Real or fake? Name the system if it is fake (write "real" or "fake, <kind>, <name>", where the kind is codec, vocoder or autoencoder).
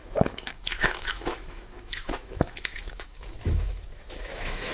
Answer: fake, autoencoder, DAC-VAE